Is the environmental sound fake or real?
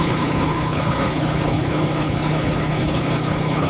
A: fake